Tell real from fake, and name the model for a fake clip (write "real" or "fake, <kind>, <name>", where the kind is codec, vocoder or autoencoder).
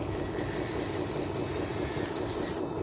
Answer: real